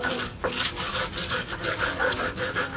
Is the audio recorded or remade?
remade